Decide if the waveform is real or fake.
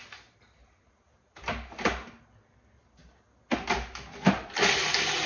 real